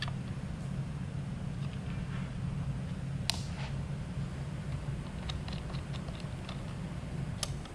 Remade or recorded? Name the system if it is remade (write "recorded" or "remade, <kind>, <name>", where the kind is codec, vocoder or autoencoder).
recorded